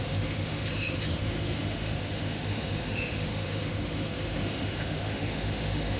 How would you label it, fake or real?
fake